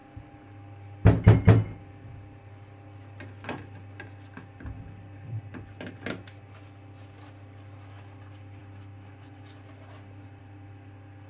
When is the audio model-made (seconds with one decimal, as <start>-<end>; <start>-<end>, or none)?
none